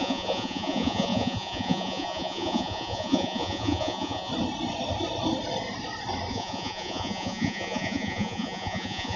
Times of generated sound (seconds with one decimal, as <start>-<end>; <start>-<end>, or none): 0.0-4.3; 6.3-9.2